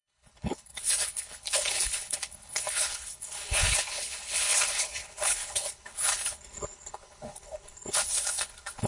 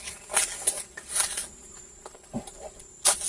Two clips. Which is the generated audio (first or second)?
first